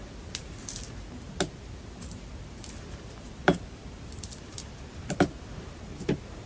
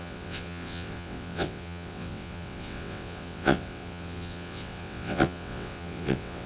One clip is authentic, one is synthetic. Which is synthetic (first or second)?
second